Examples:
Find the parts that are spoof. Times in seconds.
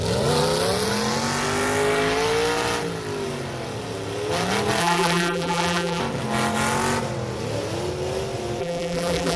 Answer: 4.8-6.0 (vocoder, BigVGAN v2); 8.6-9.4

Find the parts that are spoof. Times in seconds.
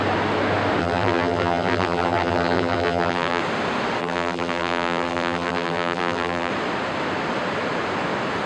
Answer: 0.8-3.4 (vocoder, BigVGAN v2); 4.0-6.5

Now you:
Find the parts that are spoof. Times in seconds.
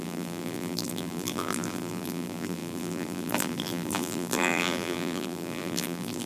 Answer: 0.0-6.3 (vocoder, BigVGAN v2)